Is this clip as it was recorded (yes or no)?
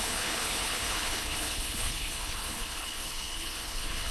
no